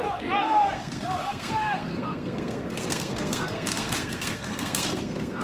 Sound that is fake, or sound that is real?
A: fake